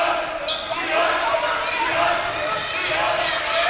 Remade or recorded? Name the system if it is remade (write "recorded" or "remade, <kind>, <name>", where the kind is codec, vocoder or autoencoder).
recorded